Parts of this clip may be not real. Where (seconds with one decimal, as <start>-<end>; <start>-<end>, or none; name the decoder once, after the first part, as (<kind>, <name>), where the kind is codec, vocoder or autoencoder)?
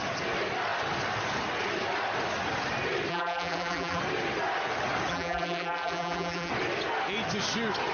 3.1-4.0 (vocoder, BigVGAN v2); 5.1-6.5